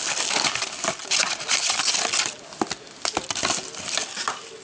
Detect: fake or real real